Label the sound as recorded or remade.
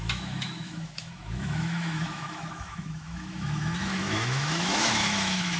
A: remade